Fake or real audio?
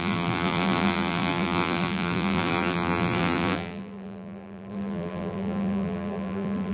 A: fake